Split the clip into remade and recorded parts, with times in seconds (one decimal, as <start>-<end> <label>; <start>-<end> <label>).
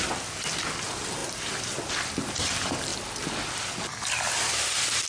0.0-5.1 recorded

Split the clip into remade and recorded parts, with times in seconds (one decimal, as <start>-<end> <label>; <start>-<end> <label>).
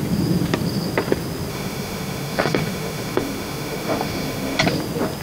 0.0-1.5 recorded; 1.5-4.6 remade; 4.6-5.2 recorded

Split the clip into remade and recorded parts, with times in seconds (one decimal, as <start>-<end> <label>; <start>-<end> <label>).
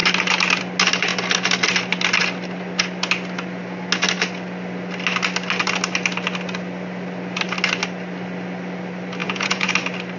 0.0-9.2 recorded; 9.2-9.7 remade; 9.7-10.2 recorded